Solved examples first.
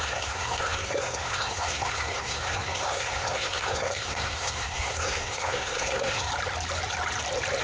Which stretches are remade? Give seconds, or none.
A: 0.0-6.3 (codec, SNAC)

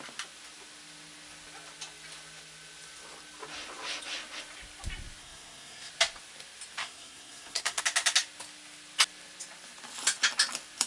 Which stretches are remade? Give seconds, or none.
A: 5.2-5.9 (codec, SNAC); 6.8-7.8

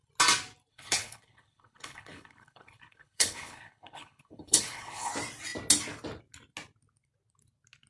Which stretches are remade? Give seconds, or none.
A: 0.7-5.1 (codec, HILCodec)

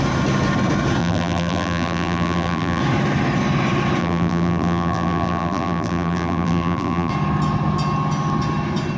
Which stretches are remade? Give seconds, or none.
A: 1.0-2.8 (vocoder, BigVGAN v2); 4.0-7.1